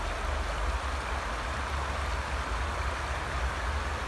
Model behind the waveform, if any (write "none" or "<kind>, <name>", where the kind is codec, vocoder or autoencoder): none